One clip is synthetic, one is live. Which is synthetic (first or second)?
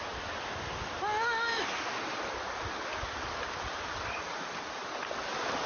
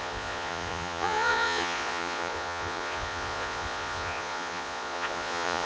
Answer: second